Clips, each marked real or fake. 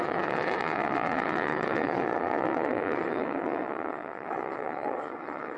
fake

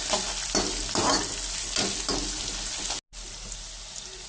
real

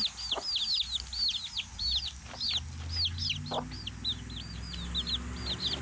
real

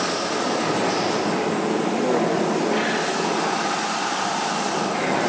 real